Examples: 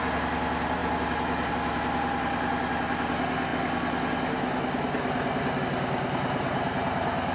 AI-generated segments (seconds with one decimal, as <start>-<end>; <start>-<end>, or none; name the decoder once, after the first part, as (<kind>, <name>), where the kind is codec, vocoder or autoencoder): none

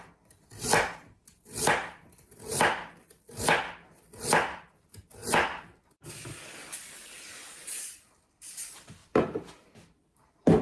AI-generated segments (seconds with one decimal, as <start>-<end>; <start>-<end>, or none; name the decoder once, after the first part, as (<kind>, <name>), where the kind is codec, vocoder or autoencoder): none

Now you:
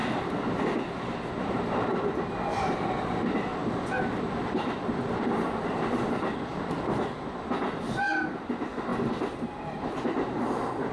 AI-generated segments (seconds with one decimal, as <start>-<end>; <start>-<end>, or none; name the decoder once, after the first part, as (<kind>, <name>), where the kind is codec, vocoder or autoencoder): 1.3-3.5 (vocoder, BigVGAN v2); 4.2-6.5; 7.6-10.9

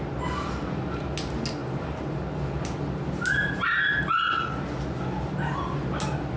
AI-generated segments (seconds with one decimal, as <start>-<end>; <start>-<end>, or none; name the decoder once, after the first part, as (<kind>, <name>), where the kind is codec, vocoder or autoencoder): none

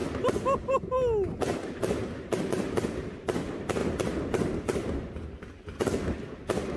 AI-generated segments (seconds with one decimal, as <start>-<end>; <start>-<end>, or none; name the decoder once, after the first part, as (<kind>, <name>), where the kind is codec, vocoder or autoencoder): none

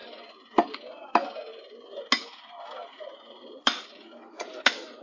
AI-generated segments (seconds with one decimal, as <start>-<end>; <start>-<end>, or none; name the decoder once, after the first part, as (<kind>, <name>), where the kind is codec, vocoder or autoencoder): 0.0-0.7 (vocoder, BigVGAN v2); 1.5-2.0; 2.8-4.5

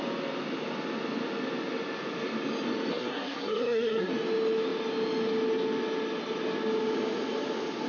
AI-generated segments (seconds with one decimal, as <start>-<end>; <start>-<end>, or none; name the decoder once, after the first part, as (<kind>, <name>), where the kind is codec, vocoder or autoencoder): 2.9-4.1 (codec, SNAC)

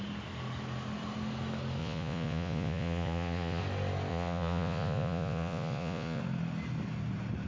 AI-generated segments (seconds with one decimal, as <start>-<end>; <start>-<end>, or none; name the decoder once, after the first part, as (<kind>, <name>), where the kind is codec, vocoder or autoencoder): 1.8-3.6 (vocoder, Vocos); 4.1-6.2